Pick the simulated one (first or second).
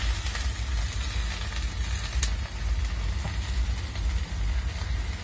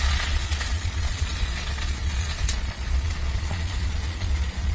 second